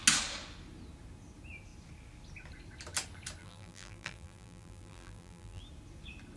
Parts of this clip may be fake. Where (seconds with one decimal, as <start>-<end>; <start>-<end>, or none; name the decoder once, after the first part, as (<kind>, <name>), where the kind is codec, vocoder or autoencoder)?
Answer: 3.4-5.6 (vocoder, BigVGAN v2)